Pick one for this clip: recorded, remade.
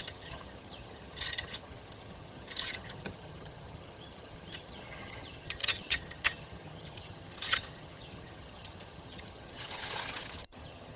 remade